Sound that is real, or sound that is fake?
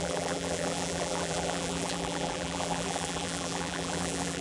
fake